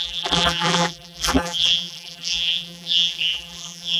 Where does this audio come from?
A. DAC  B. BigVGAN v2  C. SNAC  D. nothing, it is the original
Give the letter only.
B